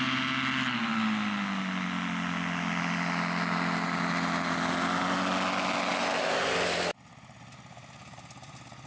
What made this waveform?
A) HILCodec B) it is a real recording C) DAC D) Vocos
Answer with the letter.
B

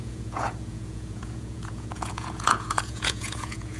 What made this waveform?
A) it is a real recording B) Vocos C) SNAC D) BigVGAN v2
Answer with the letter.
B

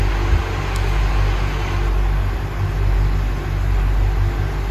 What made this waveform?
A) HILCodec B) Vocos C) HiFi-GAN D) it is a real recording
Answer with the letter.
D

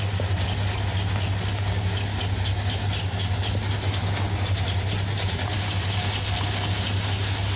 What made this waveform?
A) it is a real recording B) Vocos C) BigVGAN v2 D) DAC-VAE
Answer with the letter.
A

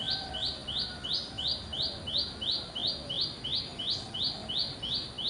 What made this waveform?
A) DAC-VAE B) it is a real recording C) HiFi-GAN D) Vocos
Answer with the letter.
B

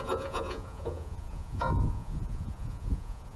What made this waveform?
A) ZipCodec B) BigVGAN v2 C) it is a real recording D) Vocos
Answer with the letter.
D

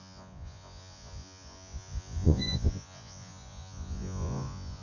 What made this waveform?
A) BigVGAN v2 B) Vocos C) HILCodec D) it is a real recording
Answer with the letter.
B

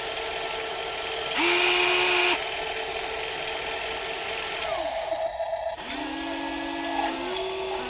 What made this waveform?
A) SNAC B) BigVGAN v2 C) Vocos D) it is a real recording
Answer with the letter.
D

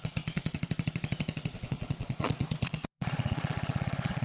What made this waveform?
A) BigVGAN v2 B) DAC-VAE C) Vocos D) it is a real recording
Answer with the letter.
C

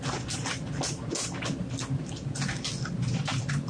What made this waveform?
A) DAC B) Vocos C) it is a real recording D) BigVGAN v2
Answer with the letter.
C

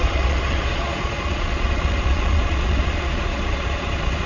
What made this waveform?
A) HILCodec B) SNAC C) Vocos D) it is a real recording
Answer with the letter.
C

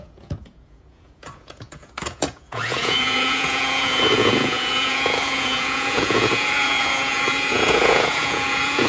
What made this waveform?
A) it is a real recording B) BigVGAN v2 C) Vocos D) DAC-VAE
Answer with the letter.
C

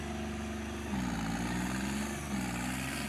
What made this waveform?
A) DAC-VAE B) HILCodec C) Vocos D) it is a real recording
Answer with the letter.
D